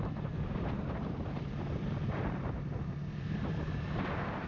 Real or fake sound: fake